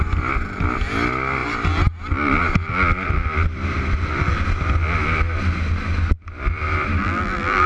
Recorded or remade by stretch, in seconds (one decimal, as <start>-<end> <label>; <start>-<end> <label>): 0.0-7.0 recorded; 7.0-7.7 remade

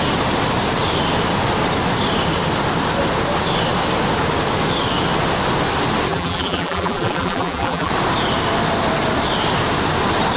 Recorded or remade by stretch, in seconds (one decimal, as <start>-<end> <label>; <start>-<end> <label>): 0.0-6.1 recorded; 6.1-7.9 remade; 7.9-10.4 recorded

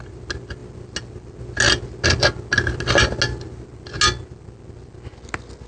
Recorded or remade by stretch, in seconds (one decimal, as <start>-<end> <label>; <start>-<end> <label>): 0.0-5.7 recorded

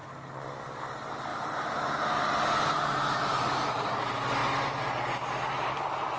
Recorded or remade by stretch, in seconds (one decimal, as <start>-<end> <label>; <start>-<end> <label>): 0.0-1.3 recorded; 1.3-3.9 remade; 3.9-6.2 recorded

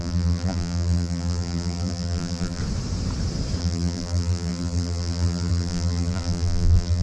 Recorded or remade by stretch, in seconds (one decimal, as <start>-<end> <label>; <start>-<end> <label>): 0.0-2.6 remade; 2.6-3.6 recorded; 3.6-7.0 remade